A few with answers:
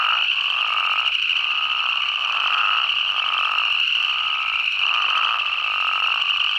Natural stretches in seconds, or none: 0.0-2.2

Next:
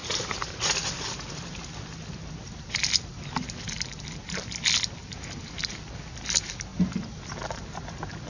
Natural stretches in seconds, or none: 0.0-8.3

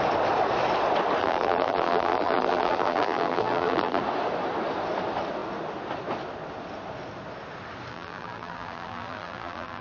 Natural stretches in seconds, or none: 0.0-1.2; 4.0-7.9

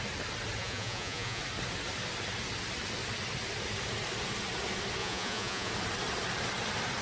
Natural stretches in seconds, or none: 0.0-0.6; 1.4-5.0; 5.7-7.0

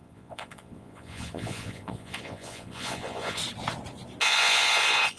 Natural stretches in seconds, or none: 3.4-4.2

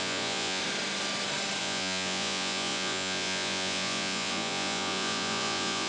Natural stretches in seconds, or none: 0.6-1.6

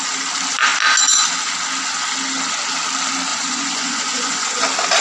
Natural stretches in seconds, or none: 0.0-3.3; 4.6-5.0

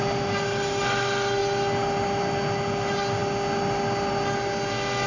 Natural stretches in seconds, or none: 0.0-5.1